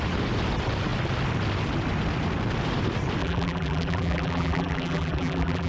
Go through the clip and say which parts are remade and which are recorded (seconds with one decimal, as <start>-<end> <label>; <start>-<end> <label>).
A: 0.0-3.2 recorded; 3.2-5.7 remade